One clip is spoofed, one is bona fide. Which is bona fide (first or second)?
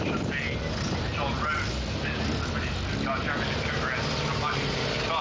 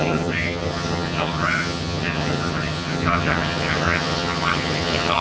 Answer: first